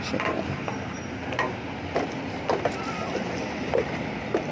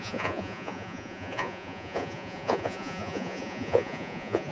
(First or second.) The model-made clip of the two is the second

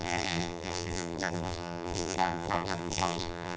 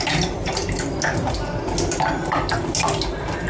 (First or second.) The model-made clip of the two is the first